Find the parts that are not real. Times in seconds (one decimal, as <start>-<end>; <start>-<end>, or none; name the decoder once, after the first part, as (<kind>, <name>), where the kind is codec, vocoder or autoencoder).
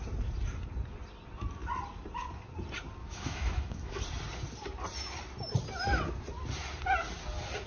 3.0-4.0 (autoencoder, DAC-VAE)